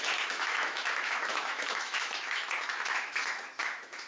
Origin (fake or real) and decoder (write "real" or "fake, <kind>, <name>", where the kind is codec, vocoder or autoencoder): fake, autoencoder, DAC-VAE